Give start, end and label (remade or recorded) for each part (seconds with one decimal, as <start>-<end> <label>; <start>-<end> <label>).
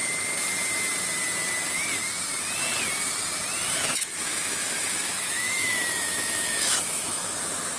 0.0-3.7 recorded; 3.7-7.8 remade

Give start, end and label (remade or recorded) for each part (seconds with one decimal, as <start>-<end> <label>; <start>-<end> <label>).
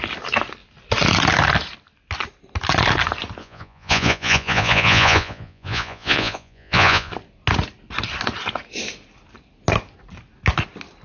0.0-3.4 recorded; 3.4-7.1 remade; 7.1-11.0 recorded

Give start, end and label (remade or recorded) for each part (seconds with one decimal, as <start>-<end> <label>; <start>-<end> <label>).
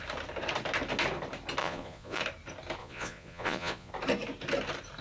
0.0-1.6 recorded; 1.6-2.2 remade; 2.2-2.8 recorded; 2.8-3.9 remade; 3.9-5.0 recorded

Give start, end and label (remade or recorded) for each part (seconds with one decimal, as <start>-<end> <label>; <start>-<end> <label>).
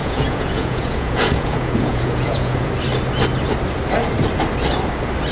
0.0-2.7 remade; 2.7-5.3 recorded